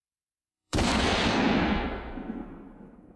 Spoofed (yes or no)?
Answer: yes